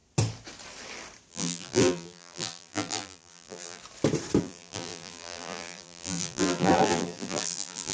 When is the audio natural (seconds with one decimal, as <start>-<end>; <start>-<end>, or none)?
0.0-1.3; 3.8-4.4